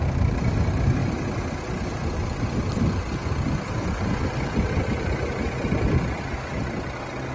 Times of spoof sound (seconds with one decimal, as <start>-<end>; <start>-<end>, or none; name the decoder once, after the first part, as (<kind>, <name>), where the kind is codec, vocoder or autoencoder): none